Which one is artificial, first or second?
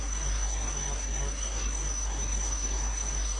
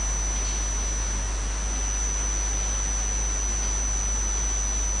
first